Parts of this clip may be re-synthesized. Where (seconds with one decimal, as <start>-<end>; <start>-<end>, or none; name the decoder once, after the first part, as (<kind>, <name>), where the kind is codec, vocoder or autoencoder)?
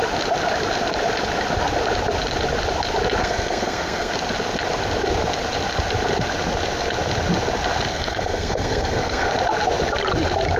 3.2-4.1 (codec, SNAC); 7.9-9.3